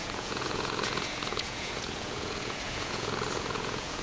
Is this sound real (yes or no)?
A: no